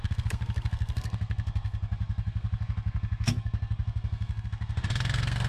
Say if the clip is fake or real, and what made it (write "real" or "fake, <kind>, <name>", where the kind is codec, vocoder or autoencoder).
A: fake, codec, SNAC